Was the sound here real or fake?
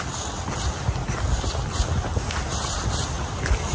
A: real